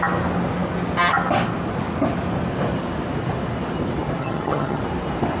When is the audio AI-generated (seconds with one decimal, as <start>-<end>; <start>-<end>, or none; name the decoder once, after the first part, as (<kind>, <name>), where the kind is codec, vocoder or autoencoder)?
4.2-4.8 (vocoder, HiFi-GAN)